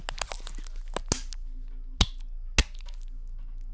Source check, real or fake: real